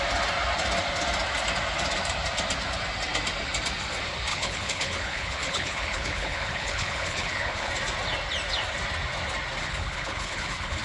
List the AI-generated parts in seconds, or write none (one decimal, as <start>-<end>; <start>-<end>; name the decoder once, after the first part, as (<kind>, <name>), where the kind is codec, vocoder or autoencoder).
4.3-7.7 (codec, HILCodec); 9.6-10.8